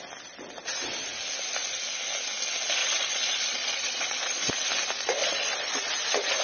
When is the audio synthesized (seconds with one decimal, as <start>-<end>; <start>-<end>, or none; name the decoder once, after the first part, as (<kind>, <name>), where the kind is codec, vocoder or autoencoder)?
2.8-4.5 (vocoder, Vocos); 5.2-5.9